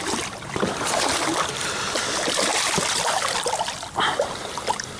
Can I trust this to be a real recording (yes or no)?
yes